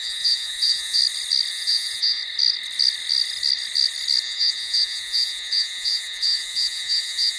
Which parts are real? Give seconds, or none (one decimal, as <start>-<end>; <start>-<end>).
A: 1.0-1.5; 2.2-4.2